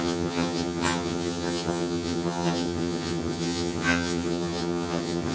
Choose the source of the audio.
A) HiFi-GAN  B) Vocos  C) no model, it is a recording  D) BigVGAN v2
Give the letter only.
A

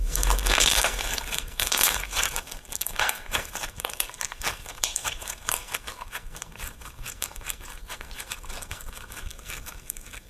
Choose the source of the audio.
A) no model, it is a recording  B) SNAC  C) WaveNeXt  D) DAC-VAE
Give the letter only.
B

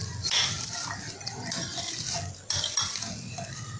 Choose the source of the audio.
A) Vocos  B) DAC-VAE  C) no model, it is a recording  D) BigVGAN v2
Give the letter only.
C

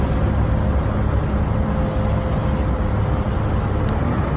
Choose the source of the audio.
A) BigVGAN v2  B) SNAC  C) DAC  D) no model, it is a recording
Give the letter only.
D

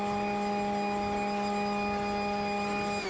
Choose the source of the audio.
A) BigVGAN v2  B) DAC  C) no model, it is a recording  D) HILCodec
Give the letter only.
C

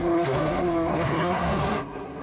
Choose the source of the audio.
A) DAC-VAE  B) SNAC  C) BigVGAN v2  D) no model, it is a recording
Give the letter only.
B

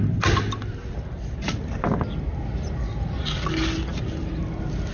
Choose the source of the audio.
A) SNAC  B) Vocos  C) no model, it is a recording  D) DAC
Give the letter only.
C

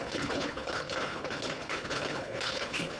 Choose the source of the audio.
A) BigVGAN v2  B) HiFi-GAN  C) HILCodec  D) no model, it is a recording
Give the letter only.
C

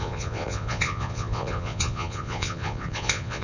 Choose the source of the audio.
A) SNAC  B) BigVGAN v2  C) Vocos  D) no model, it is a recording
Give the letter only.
C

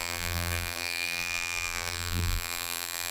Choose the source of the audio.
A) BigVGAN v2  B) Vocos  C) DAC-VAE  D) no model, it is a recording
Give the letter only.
A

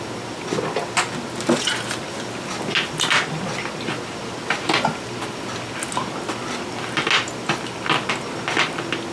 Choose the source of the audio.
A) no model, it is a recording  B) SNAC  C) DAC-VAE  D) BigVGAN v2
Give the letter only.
A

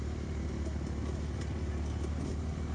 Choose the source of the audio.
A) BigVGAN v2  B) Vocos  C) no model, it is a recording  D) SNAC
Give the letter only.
C